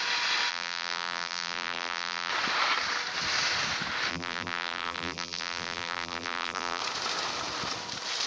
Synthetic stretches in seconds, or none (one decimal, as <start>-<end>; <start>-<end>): 0.5-2.3; 4.1-6.8